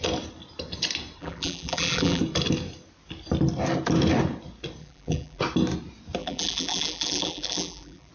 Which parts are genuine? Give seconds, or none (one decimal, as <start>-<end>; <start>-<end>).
0.0-1.2; 2.2-4.8; 5.4-6.2